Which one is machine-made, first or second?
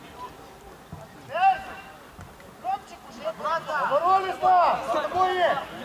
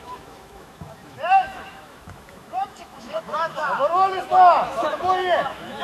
second